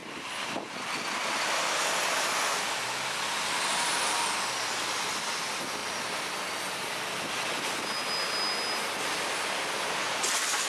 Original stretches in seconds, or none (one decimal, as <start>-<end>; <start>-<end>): 0.0-10.7

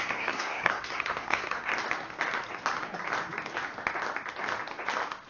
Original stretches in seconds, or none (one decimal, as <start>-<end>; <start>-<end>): 1.7-5.3

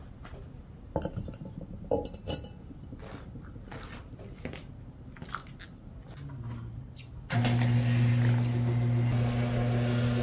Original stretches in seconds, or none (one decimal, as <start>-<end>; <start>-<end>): 0.0-10.2

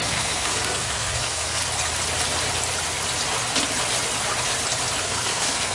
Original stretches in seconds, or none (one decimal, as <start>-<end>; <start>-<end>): 1.6-5.0

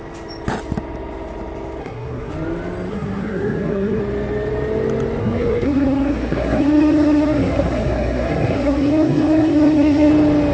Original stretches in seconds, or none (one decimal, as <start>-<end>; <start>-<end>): 0.0-1.8; 2.3-2.9; 4.0-5.2; 10.1-10.5